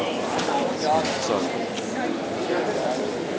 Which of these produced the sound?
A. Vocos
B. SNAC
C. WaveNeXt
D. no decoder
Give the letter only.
D